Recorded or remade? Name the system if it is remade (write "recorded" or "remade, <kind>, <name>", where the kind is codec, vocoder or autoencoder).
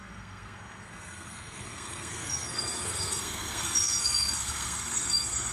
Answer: remade, codec, SNAC